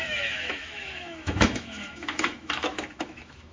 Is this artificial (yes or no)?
yes